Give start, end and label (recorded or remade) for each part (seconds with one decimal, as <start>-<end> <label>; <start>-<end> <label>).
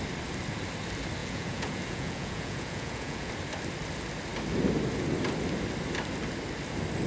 0.0-1.2 recorded; 1.2-3.3 remade; 3.3-7.1 recorded